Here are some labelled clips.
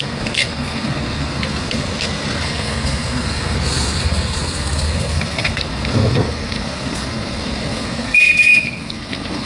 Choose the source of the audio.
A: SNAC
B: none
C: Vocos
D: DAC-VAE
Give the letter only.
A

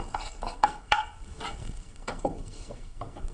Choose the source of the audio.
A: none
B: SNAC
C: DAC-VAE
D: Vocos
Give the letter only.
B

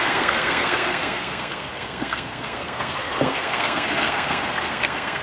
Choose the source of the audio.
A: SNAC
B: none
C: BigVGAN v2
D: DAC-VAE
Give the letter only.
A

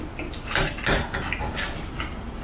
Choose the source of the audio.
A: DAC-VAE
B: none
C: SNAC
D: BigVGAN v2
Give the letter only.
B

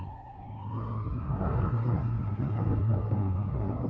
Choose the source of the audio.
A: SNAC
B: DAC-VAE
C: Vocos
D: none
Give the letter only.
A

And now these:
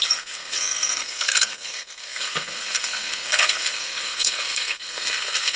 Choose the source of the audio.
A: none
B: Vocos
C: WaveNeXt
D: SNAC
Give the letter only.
D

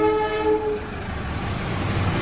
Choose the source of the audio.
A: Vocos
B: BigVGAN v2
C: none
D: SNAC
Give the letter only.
C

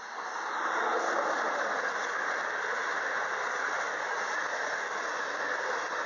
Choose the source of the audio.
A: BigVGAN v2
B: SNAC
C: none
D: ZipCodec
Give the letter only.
C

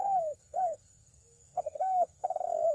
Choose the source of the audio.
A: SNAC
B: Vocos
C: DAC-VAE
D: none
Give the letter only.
A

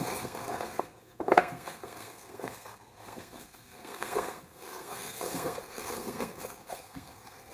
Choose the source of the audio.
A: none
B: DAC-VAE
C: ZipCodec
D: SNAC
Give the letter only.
D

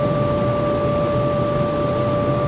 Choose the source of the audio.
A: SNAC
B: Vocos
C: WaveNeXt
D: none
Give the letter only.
D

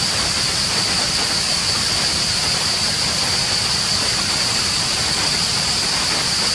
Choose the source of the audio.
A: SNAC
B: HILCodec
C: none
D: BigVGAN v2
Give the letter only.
C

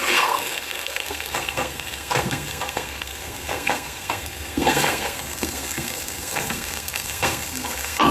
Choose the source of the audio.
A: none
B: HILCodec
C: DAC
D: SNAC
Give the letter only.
D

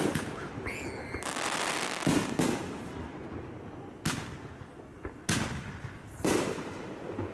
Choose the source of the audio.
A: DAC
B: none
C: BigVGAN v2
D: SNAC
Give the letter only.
B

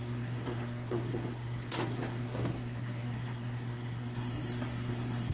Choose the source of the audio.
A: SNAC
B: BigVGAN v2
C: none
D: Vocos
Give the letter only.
A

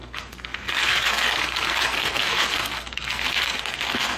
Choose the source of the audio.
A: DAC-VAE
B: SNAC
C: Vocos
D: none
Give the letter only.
B